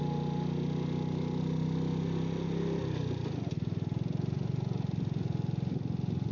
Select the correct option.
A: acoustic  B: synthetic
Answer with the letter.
A